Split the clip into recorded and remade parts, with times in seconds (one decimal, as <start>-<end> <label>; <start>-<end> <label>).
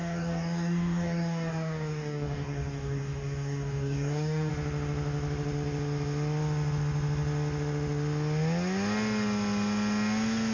0.0-4.5 remade; 4.5-10.5 recorded